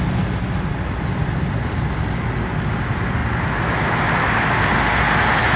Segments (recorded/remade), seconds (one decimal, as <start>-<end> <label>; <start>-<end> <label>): 0.0-5.6 recorded